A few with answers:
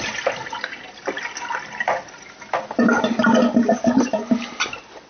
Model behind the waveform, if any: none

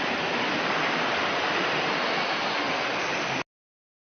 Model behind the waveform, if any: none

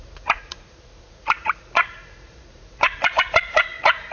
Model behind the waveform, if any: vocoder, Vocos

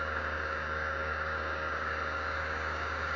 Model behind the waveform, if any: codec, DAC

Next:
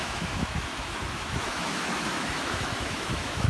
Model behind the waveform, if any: autoencoder, DAC-VAE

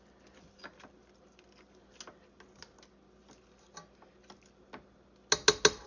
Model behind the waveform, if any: none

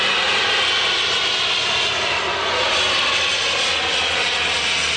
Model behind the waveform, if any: none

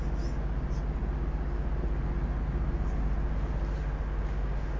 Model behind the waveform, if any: none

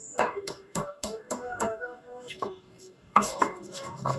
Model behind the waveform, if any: codec, DAC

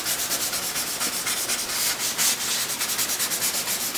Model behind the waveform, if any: none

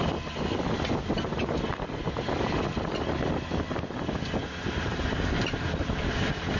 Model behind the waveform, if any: none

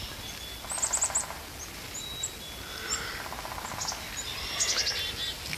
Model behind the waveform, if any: none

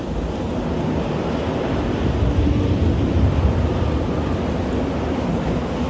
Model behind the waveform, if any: none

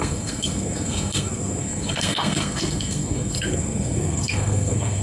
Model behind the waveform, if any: codec, SNAC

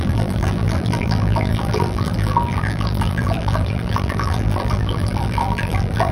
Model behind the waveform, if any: vocoder, BigVGAN v2